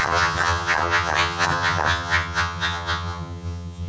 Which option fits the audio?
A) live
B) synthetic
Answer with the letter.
B